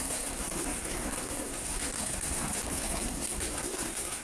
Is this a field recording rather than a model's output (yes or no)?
no